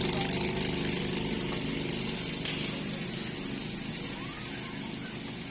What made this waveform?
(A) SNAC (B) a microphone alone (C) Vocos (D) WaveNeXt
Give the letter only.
B